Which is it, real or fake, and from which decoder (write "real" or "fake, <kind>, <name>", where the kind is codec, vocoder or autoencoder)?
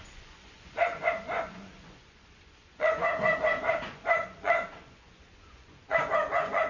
fake, vocoder, Vocos